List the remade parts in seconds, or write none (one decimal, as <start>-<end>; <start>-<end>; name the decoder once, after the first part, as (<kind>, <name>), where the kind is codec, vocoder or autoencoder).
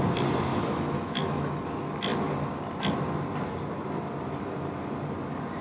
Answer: 0.5-1.6 (autoencoder, DAC-VAE)